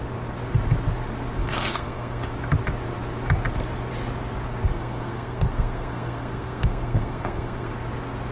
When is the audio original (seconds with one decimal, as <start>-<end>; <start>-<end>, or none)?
0.0-1.4; 2.3-4.7; 7.7-8.3